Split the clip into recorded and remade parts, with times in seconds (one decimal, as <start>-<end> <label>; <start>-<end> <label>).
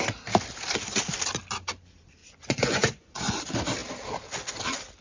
0.0-2.2 recorded; 2.2-3.4 remade; 3.4-5.0 recorded